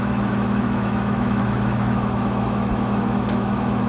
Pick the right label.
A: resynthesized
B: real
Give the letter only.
A